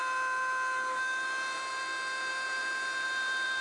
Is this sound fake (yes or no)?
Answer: yes